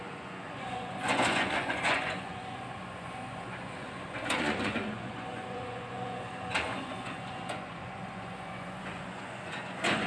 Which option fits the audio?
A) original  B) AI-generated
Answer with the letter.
B